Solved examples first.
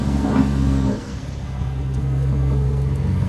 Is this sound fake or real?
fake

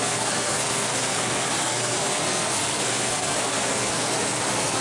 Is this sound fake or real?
fake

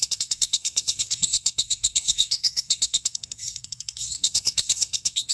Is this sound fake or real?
fake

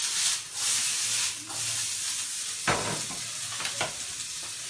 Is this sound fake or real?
real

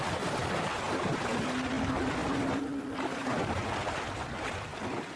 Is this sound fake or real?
real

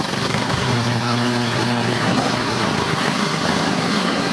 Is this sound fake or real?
fake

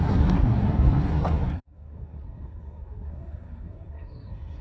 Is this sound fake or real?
fake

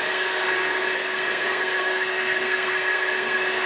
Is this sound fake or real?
fake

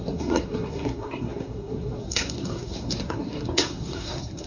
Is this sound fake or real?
fake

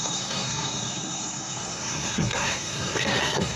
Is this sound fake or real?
fake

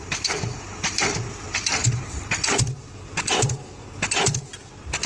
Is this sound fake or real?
real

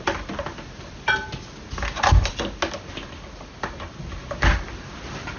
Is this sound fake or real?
real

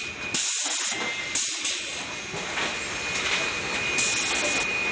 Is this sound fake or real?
real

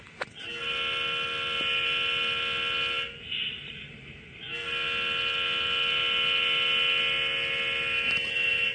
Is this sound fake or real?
real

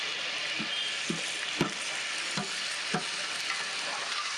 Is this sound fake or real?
real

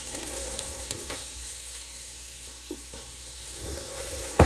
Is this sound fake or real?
fake